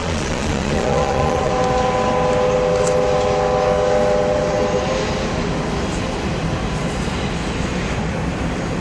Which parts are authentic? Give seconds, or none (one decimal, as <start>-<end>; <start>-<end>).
1.5-8.8